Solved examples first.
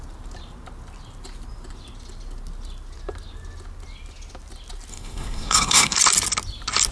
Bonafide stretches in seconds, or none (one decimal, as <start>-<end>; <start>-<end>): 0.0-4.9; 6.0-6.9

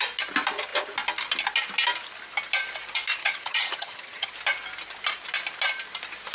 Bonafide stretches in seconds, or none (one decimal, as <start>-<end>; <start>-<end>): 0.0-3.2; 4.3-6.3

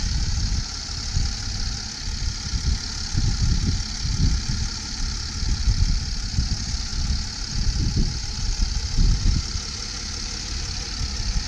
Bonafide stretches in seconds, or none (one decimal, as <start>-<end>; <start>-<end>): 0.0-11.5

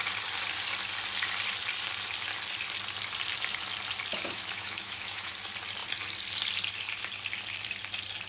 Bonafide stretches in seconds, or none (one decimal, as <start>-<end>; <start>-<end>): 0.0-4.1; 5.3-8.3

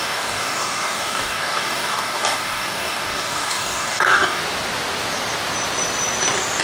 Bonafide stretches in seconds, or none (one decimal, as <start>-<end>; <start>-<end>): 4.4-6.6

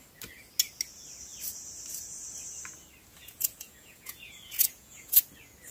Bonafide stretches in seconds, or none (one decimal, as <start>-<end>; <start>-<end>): 0.0-3.2; 5.2-5.7